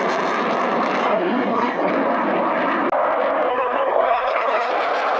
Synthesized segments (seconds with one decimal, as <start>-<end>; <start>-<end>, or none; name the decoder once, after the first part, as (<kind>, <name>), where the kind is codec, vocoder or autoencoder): 1.0-1.9 (codec, SNAC); 3.5-4.7